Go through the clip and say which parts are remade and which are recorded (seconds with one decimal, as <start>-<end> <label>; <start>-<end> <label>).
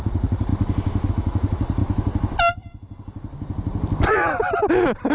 0.0-0.5 remade; 0.5-1.1 recorded; 1.1-1.8 remade; 1.8-5.1 recorded